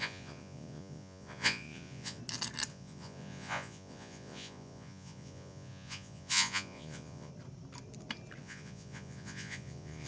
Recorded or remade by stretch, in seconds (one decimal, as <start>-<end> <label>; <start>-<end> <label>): 0.0-2.2 remade; 2.2-2.7 recorded; 2.7-7.3 remade; 7.3-8.4 recorded; 8.4-10.1 remade